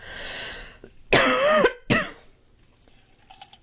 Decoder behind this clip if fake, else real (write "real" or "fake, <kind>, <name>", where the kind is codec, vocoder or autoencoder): real